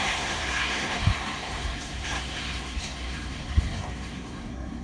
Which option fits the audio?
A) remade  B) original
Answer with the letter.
A